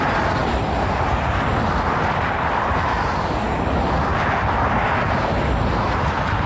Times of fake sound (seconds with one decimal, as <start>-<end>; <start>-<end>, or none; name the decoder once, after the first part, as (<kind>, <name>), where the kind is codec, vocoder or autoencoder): none